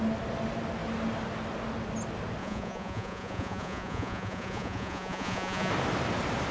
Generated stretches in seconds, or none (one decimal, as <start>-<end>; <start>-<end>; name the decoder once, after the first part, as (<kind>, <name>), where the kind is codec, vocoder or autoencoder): 2.4-5.7 (vocoder, Vocos)